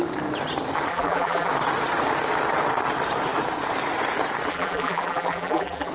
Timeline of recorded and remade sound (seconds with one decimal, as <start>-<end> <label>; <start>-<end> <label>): 0.0-0.9 recorded; 0.9-1.5 remade; 1.5-4.5 recorded; 4.5-5.9 remade